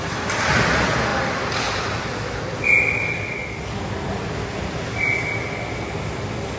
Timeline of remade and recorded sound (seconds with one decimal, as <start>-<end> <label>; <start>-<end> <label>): 0.0-6.6 recorded

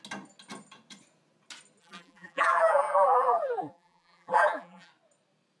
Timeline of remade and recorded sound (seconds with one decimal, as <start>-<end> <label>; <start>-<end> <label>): 0.0-1.8 recorded; 1.8-4.9 remade; 4.9-5.6 recorded

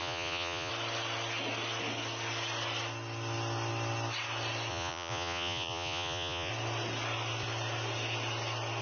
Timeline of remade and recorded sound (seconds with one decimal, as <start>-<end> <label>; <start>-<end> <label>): 0.0-0.7 remade; 0.7-4.7 recorded; 4.7-6.5 remade; 6.5-8.8 recorded

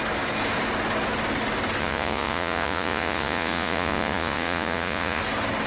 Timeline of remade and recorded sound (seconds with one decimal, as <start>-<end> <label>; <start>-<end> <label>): 0.0-1.8 recorded; 1.8-5.2 remade; 5.2-5.7 recorded

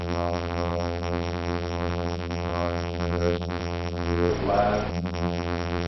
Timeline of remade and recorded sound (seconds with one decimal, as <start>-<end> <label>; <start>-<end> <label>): 0.0-4.3 remade; 4.3-4.9 recorded; 4.9-5.9 remade

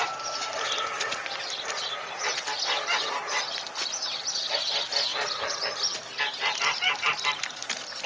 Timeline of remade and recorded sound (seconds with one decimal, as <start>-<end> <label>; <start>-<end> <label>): 0.0-8.1 recorded

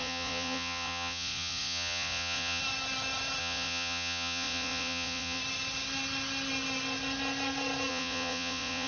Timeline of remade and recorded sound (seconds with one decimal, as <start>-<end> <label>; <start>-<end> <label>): 0.0-2.6 remade; 2.6-3.4 recorded; 3.4-5.4 remade; 5.4-7.9 recorded; 7.9-8.9 remade